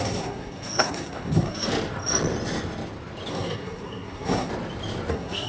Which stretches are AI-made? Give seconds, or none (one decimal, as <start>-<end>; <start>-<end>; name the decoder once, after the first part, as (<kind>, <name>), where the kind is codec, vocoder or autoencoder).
0.0-1.7 (codec, SNAC); 3.3-4.5; 5.1-5.5